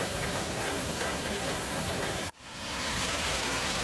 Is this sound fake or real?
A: fake